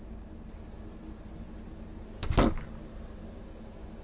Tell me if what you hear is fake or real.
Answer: real